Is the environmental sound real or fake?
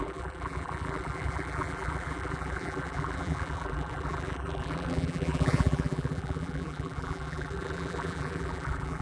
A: fake